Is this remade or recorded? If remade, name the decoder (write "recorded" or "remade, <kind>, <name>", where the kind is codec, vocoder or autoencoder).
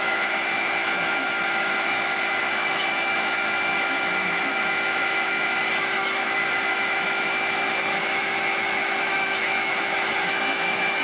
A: remade, autoencoder, DAC-VAE